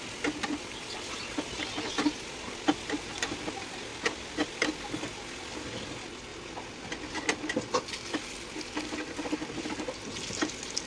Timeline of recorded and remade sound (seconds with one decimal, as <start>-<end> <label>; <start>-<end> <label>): 0.0-3.9 recorded; 3.9-4.5 remade; 4.5-6.3 recorded; 6.3-7.5 remade; 7.5-10.9 recorded